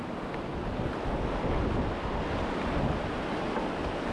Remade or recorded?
recorded